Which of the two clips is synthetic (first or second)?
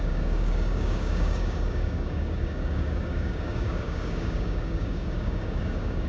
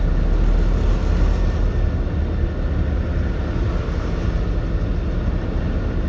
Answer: first